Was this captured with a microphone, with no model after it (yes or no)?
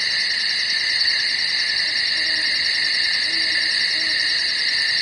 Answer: yes